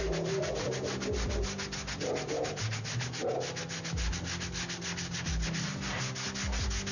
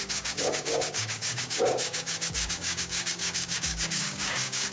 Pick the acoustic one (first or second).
first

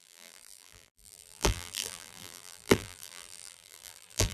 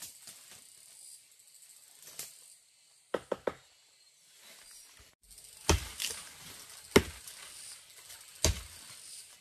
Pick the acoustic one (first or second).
second